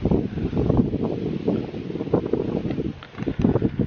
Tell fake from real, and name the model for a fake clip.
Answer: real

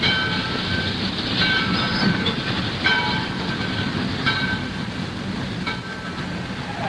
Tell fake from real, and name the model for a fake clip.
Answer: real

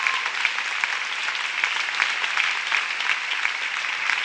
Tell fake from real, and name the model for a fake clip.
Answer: real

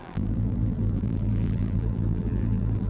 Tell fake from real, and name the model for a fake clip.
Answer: fake, vocoder, BigVGAN v2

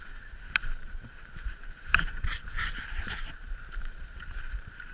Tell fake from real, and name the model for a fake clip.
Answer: fake, vocoder, BigVGAN v2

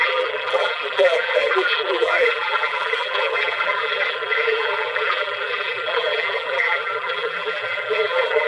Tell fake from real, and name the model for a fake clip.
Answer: fake, vocoder, BigVGAN v2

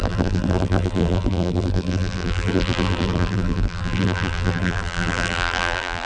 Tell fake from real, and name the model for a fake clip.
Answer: fake, vocoder, BigVGAN v2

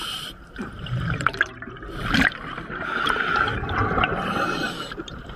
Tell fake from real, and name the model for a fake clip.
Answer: fake, vocoder, BigVGAN v2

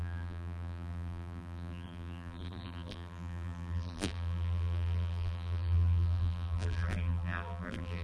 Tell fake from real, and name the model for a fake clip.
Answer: fake, vocoder, BigVGAN v2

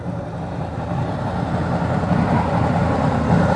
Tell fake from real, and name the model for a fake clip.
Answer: fake, vocoder, BigVGAN v2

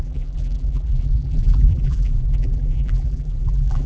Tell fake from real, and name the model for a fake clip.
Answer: fake, vocoder, BigVGAN v2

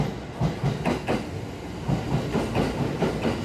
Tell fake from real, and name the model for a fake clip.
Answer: real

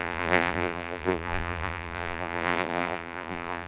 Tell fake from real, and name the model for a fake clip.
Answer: fake, vocoder, BigVGAN v2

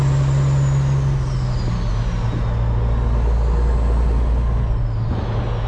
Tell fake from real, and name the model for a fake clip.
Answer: real